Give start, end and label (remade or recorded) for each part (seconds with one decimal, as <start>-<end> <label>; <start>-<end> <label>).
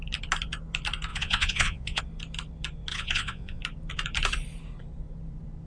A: 0.0-1.1 recorded; 1.1-2.0 remade; 2.0-2.9 recorded; 2.9-3.6 remade; 3.6-5.7 recorded